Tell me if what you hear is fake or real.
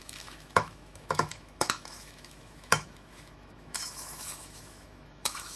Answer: fake